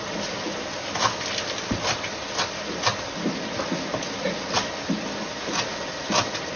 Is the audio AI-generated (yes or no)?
no